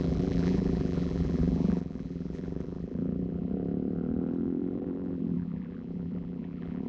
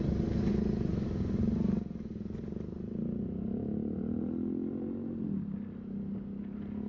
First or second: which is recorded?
second